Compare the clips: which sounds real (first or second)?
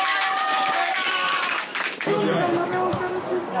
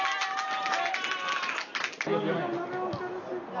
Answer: second